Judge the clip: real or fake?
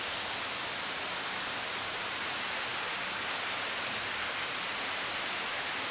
real